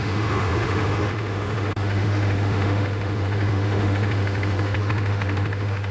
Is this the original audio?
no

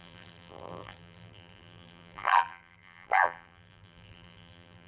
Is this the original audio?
no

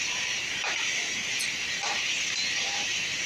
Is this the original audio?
no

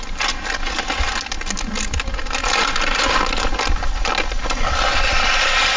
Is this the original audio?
yes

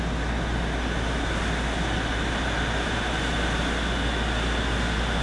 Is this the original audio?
yes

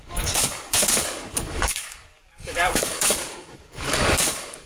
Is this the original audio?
no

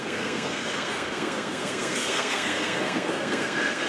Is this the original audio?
no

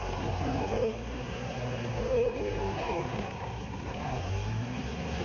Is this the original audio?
no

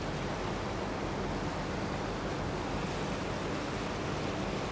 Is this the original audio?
yes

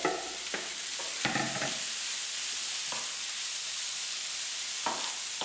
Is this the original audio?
yes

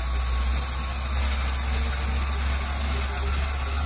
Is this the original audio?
yes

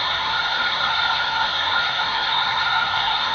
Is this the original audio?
no